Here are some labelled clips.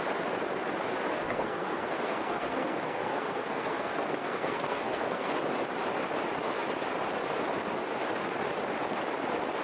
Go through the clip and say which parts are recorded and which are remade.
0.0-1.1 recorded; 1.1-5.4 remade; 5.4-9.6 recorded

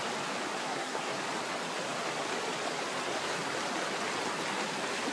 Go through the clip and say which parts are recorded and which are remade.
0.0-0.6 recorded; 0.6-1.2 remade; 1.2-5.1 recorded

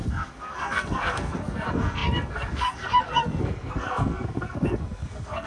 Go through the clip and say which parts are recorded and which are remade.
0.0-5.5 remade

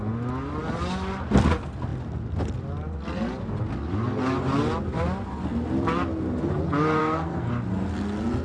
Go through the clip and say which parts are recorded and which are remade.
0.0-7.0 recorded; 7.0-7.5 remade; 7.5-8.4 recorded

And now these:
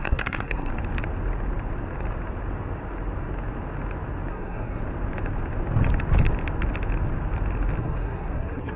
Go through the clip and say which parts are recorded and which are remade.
0.0-0.7 remade; 0.7-4.3 recorded; 4.3-4.8 remade; 4.8-7.8 recorded; 7.8-8.8 remade

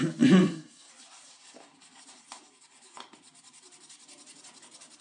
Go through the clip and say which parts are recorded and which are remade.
0.0-0.4 recorded; 0.4-0.9 remade; 0.9-5.0 recorded

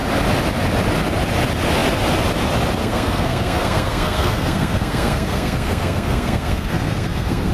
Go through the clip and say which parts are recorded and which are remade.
0.0-2.8 recorded; 2.8-7.5 remade